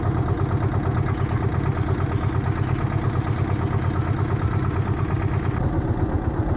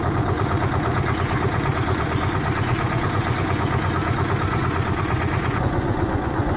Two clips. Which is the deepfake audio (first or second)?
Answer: second